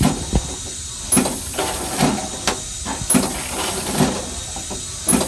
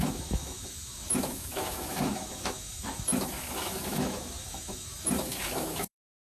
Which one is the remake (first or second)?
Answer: second